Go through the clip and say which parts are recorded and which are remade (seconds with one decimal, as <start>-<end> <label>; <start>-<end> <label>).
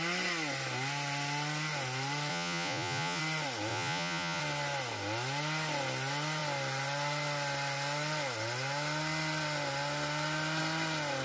0.0-2.3 recorded; 2.3-3.2 remade; 3.2-3.7 recorded; 3.7-4.4 remade; 4.4-11.2 recorded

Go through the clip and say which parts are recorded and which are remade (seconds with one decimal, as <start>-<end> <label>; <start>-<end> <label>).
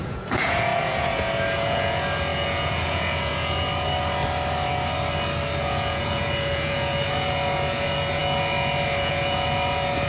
0.0-3.7 remade; 3.7-5.6 recorded; 5.6-10.1 remade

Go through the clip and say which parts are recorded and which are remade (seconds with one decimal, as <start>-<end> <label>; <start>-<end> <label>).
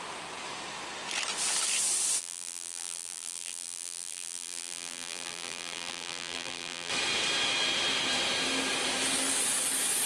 0.0-2.2 recorded; 2.2-6.9 remade; 6.9-10.1 recorded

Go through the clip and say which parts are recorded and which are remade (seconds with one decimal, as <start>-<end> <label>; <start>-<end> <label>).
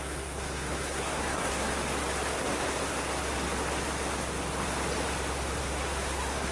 0.0-1.7 remade; 1.7-5.6 recorded; 5.6-6.5 remade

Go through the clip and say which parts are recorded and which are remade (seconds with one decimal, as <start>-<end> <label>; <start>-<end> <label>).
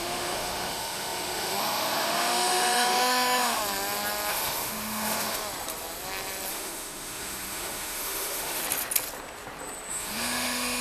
0.0-3.6 remade; 3.6-4.3 recorded; 4.3-5.4 remade; 5.4-6.5 recorded; 6.5-8.6 remade; 8.6-9.9 recorded; 9.9-10.8 remade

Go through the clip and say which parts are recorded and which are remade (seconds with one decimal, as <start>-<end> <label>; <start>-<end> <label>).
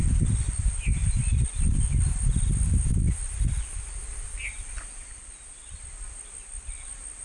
0.0-7.2 recorded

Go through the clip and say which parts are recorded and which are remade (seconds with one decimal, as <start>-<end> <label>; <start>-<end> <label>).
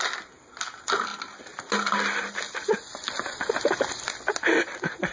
0.0-5.1 recorded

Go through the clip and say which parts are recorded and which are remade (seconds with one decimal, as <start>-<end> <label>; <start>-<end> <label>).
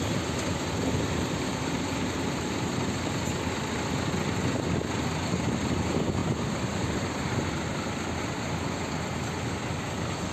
0.0-1.5 recorded; 1.5-3.1 remade; 3.1-6.2 recorded; 6.2-8.1 remade; 8.1-10.3 recorded